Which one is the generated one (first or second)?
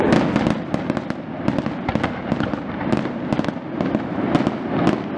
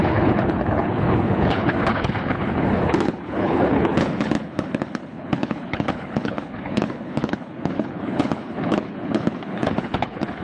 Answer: second